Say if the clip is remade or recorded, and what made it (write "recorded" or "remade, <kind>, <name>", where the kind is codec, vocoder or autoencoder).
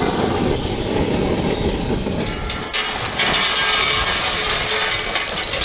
recorded